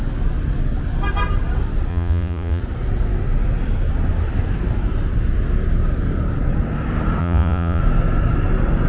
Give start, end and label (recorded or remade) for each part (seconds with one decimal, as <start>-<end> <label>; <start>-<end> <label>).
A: 0.0-1.9 recorded; 1.9-2.6 remade; 2.6-7.2 recorded; 7.2-7.8 remade; 7.8-8.9 recorded